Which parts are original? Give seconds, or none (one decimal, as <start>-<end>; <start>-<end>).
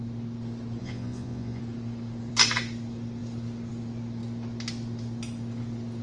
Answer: 0.0-0.8; 1.6-6.0